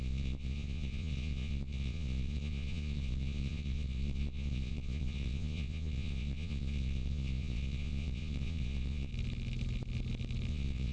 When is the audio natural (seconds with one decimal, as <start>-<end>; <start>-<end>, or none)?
9.1-10.5